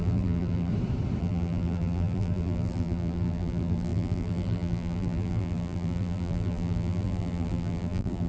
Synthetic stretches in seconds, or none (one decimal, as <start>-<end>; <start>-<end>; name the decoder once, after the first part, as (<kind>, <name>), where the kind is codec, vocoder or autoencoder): 0.0-0.7 (vocoder, BigVGAN v2); 1.2-8.3